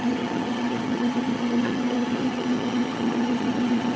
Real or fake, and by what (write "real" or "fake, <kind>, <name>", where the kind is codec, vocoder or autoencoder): fake, vocoder, HiFi-GAN